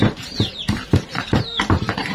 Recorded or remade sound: remade